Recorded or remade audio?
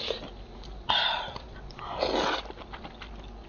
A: recorded